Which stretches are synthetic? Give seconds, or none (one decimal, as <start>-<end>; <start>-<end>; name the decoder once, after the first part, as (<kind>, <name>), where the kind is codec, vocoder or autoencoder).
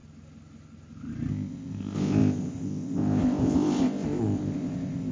1.3-5.1 (codec, ZipCodec)